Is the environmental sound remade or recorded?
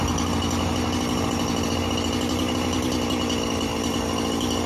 recorded